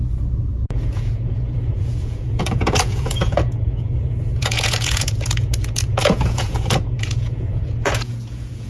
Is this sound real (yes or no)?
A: no